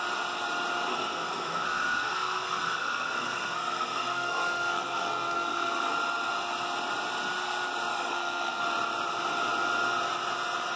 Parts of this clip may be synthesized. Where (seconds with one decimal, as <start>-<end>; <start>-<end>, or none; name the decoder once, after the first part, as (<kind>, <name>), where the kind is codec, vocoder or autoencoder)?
0.9-5.9 (codec, SNAC); 7.9-8.6